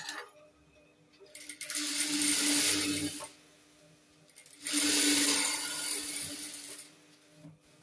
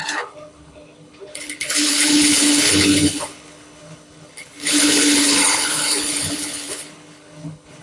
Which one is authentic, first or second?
first